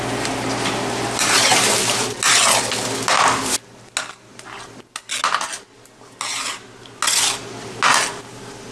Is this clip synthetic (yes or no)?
no